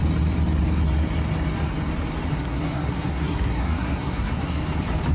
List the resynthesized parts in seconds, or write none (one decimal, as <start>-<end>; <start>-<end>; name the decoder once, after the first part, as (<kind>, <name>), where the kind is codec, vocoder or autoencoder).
2.3-4.6 (codec, SNAC)